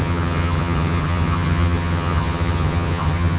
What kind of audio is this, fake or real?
fake